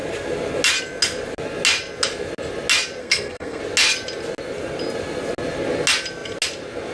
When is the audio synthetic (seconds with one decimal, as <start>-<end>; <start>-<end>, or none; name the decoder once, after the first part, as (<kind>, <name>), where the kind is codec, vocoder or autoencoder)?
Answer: 3.0-3.6 (codec, SNAC)